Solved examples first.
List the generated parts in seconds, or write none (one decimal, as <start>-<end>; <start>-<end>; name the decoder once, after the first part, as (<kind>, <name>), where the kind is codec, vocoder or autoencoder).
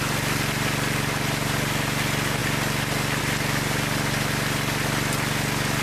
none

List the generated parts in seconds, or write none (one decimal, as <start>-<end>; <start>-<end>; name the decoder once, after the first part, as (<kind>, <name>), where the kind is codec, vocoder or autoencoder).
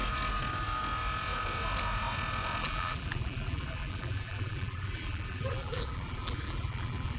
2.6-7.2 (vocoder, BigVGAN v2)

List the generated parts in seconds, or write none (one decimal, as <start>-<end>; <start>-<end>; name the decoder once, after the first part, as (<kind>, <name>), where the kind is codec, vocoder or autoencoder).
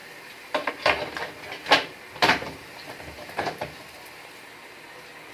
1.6-3.8 (vocoder, BigVGAN v2)